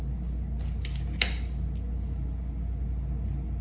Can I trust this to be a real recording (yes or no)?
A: yes